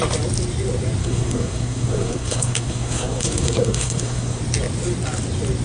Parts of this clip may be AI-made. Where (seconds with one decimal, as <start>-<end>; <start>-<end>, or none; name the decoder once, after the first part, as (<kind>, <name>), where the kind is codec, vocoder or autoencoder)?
1.0-4.4 (codec, SNAC)